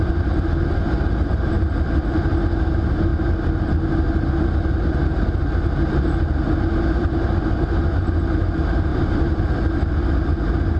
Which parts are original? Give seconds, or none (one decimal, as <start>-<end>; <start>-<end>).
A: 0.0-8.9; 9.6-10.8